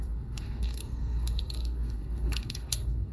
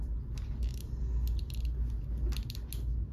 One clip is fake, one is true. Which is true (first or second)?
second